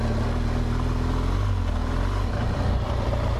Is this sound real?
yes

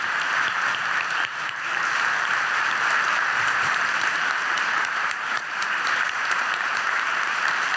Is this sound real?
no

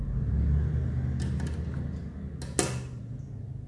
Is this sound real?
yes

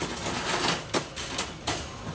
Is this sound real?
yes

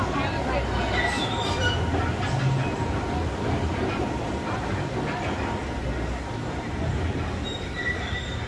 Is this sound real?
yes